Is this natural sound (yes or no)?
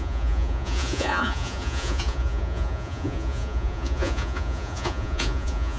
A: no